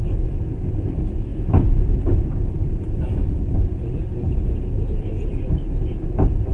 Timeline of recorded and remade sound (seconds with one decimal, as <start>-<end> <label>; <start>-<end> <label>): 0.0-1.3 recorded; 1.3-1.9 remade; 1.9-6.5 recorded